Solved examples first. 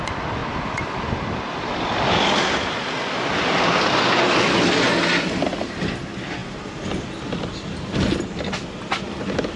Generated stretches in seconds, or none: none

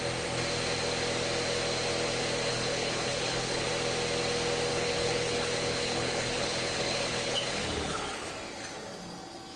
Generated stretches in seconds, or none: 2.5-3.7 (codec, HILCodec); 4.7-8.3

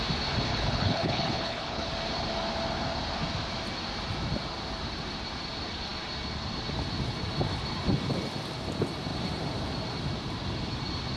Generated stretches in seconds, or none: 0.5-1.9 (codec, HILCodec)

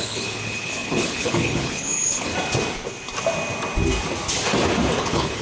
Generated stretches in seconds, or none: 0.0-2.3 (codec, HILCodec); 5.0-5.4

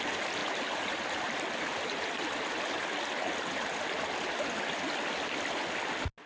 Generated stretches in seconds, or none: none

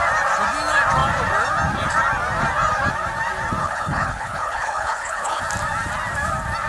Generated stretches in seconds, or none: 3.6-5.4 (codec, HILCodec)